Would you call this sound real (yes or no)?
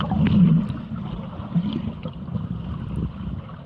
yes